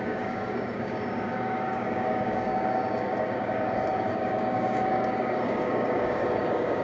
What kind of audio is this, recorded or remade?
remade